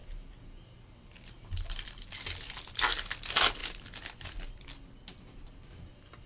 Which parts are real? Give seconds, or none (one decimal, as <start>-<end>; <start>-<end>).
0.0-6.3